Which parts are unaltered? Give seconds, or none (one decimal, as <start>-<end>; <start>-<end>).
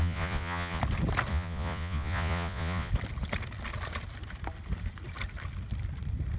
0.8-1.3; 2.9-6.4